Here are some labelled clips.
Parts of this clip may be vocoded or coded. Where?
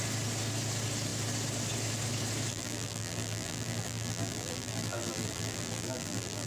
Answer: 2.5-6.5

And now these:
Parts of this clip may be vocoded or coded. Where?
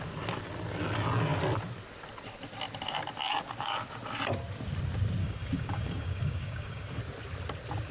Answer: 5.2-7.0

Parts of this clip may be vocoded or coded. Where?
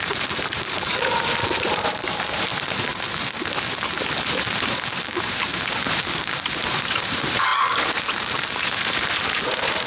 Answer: 0.0-2.5; 4.0-9.9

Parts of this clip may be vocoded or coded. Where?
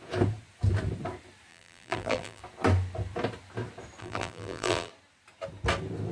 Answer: 1.5-2.4; 4.0-4.9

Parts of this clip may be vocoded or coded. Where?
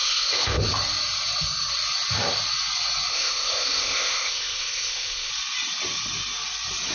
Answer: 0.0-0.6; 3.1-5.3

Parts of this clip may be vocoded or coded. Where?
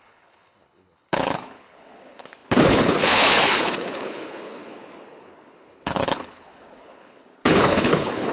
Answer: 0.0-8.3